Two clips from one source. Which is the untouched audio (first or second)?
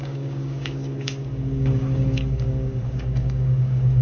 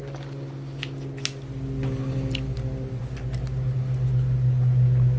second